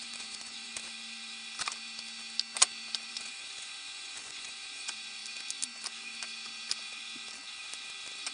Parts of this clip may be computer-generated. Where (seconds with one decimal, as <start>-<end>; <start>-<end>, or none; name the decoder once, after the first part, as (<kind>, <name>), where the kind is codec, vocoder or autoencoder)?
0.0-0.7 (vocoder, Vocos); 3.1-5.2